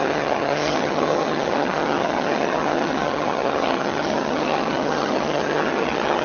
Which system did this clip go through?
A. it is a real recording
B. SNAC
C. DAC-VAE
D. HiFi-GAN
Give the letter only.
D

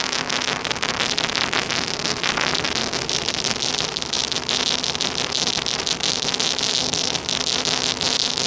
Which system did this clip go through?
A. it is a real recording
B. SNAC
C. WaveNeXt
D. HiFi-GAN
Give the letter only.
A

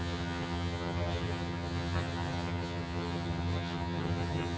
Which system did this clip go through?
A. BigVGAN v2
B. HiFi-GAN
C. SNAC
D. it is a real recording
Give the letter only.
B